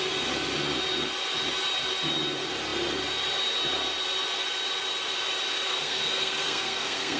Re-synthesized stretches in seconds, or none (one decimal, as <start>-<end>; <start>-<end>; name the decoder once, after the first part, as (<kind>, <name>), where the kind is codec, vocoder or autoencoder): 5.7-7.2 (codec, SNAC)